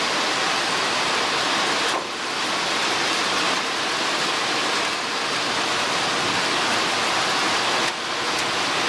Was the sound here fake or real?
real